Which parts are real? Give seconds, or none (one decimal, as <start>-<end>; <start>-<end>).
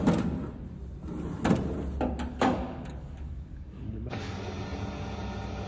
0.0-2.3; 4.3-5.7